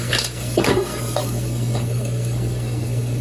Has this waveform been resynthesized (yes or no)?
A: yes